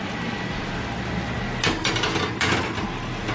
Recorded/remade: recorded